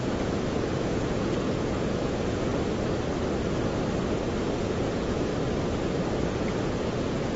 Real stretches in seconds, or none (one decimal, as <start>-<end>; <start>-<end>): 2.5-4.6; 5.3-6.3